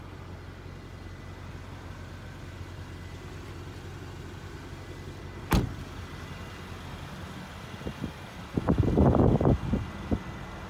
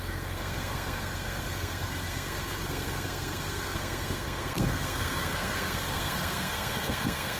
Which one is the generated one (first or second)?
second